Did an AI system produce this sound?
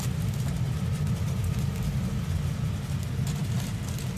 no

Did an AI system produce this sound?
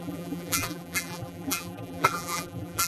yes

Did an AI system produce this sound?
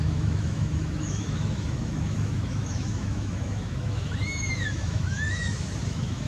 yes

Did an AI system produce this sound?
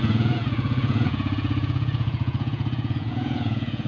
yes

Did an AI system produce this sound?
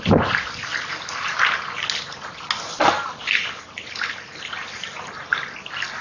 no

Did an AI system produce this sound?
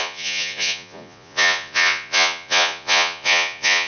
yes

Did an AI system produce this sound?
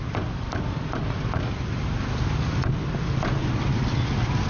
no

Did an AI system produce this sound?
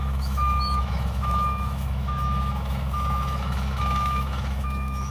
yes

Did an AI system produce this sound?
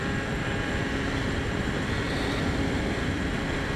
yes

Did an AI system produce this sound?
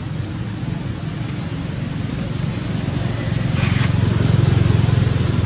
no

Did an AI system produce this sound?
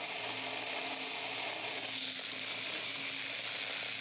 no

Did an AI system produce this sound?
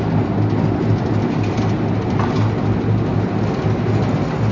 no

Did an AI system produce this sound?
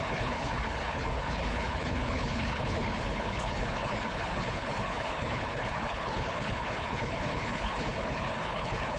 yes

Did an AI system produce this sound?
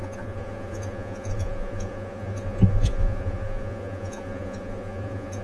yes